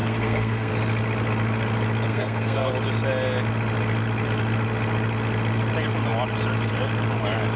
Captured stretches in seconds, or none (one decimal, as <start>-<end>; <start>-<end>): 0.7-2.1; 2.7-7.6